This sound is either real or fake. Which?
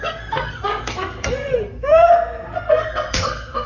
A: fake